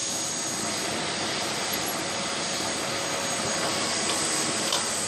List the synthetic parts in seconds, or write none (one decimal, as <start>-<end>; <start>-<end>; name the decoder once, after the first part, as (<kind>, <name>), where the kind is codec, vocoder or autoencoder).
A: none